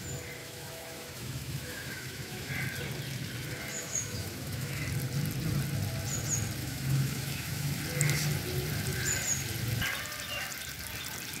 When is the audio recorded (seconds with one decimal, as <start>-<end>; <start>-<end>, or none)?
0.0-0.4; 2.5-3.7; 4.8-6.6; 7.8-11.4

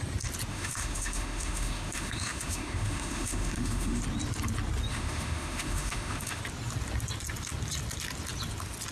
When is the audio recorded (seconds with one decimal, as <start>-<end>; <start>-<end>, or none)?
0.0-0.5; 4.0-4.9; 6.4-8.9

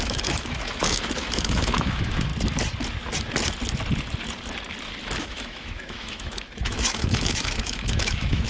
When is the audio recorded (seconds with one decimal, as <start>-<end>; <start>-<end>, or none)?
2.3-5.2